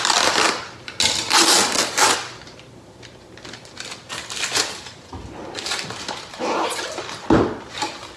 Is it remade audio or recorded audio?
recorded